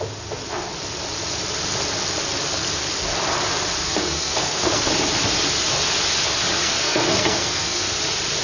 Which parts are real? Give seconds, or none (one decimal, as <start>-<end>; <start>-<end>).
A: 0.0-3.8; 4.9-6.6; 8.0-8.4